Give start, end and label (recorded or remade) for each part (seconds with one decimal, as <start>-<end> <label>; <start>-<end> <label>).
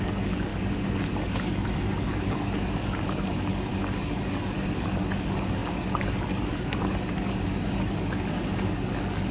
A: 0.0-9.3 remade